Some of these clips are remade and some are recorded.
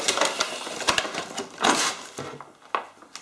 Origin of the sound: recorded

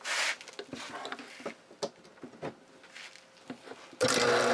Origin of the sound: recorded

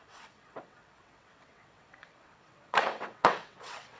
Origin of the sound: remade